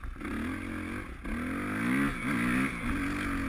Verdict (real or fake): real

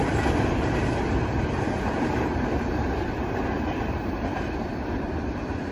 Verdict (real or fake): fake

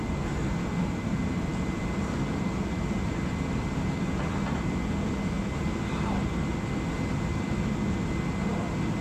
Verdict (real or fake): real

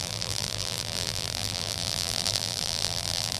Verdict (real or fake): fake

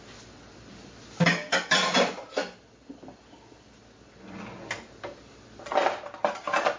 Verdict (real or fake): real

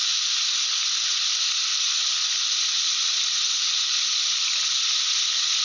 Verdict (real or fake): real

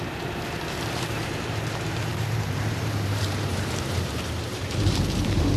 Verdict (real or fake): fake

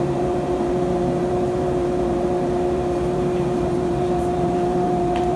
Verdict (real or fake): fake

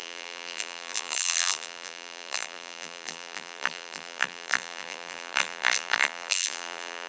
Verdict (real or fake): fake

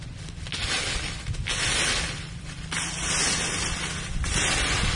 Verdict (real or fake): real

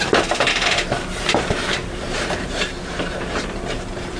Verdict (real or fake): fake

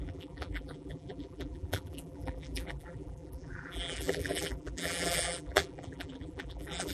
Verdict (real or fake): fake